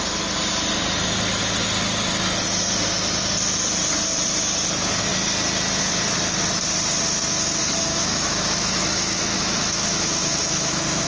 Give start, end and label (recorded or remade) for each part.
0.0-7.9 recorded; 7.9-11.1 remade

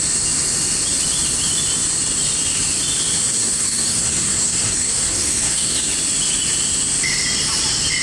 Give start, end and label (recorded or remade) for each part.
0.0-3.2 recorded; 3.2-5.9 remade; 5.9-8.0 recorded

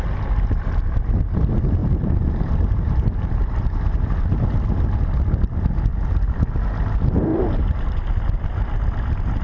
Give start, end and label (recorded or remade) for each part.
0.0-1.8 recorded; 1.8-4.2 remade; 4.2-7.3 recorded; 7.3-8.0 remade; 8.0-9.4 recorded

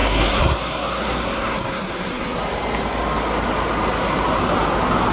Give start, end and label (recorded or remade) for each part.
0.0-2.4 remade; 2.4-5.1 recorded

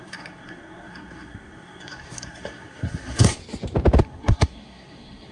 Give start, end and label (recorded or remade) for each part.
0.0-3.4 remade; 3.4-4.0 recorded; 4.0-5.3 remade